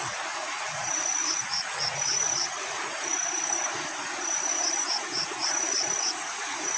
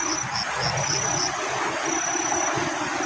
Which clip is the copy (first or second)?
first